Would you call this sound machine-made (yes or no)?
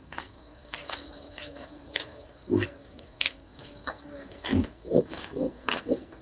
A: yes